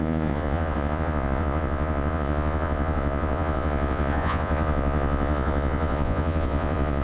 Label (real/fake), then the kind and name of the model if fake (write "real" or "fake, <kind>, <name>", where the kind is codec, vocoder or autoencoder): fake, vocoder, Vocos